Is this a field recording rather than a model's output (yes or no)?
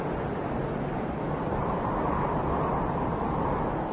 yes